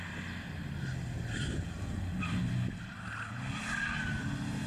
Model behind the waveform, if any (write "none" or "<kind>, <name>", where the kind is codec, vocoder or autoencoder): none